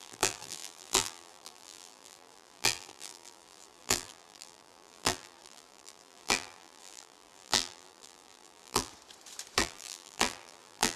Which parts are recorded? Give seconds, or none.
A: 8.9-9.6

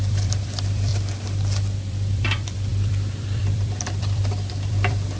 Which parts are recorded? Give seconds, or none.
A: 0.9-1.9

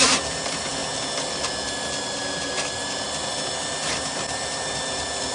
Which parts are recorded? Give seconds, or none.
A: 0.8-3.7

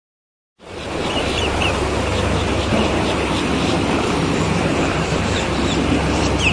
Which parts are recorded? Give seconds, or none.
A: 0.0-2.5

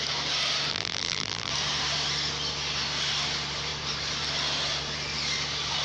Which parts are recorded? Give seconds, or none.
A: 0.0-0.7; 1.5-5.8